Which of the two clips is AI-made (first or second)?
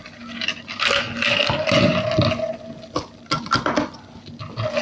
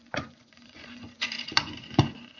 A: second